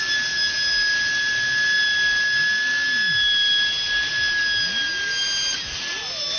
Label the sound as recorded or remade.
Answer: recorded